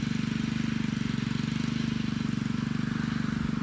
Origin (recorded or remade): recorded